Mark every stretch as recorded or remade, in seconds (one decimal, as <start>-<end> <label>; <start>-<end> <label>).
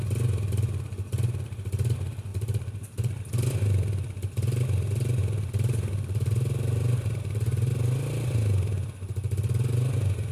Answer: 0.0-2.3 recorded; 2.3-3.2 remade; 3.2-5.2 recorded; 5.2-7.7 remade; 7.7-10.3 recorded